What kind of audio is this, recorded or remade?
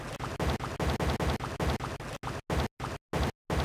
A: recorded